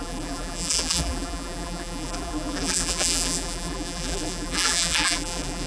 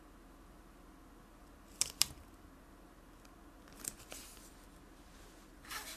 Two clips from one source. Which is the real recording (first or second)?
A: second